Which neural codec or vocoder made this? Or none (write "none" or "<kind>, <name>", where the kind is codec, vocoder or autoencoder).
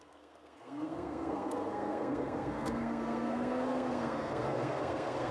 codec, SNAC